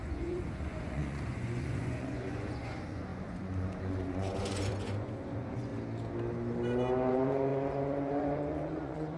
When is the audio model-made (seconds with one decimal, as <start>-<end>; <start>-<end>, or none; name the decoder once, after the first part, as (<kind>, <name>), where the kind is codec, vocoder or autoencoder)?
0.0-5.7 (vocoder, Vocos); 7.1-9.2